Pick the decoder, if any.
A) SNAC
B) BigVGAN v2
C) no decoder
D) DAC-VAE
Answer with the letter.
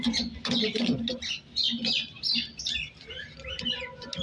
C